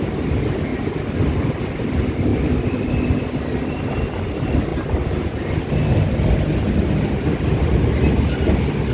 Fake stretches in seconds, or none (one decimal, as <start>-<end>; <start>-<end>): none